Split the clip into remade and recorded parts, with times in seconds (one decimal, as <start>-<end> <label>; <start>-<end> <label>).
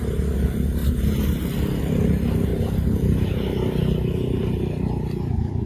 0.0-0.8 recorded; 0.8-1.4 remade; 1.4-5.7 recorded